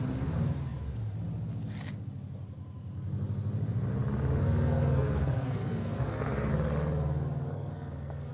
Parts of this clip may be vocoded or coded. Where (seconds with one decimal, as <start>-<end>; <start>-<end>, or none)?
4.4-6.5; 7.5-8.3